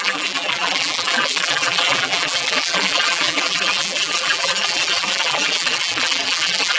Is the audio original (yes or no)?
no